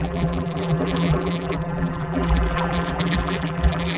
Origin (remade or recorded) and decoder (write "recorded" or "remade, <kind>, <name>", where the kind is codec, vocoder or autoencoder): remade, vocoder, BigVGAN v2